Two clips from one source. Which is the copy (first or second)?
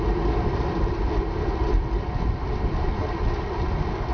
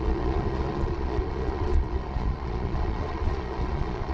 second